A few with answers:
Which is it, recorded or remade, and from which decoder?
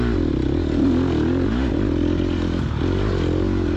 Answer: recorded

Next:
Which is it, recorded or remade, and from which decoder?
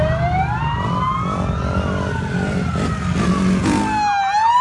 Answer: recorded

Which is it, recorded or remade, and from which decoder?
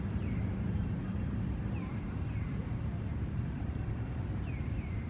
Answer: remade, vocoder, BigVGAN v2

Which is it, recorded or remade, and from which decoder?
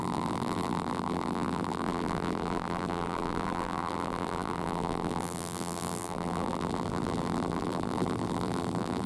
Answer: remade, vocoder, BigVGAN v2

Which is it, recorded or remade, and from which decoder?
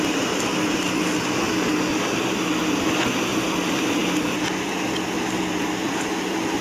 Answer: recorded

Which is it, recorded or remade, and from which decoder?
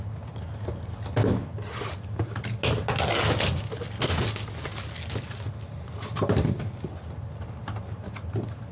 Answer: recorded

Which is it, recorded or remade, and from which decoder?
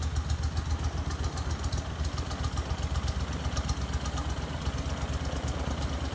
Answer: recorded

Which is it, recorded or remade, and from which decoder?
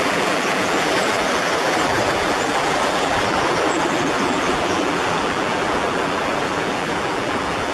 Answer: remade, vocoder, BigVGAN v2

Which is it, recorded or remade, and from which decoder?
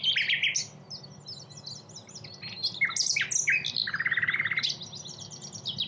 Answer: recorded